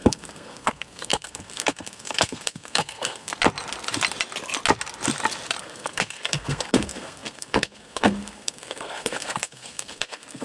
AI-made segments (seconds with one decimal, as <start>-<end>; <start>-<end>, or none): 0.0-3.3; 5.6-10.4